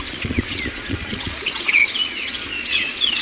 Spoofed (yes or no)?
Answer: yes